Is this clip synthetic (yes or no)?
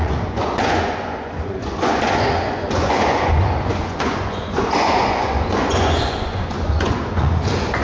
yes